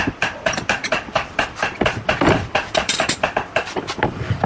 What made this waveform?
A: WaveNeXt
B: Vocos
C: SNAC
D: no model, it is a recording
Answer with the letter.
D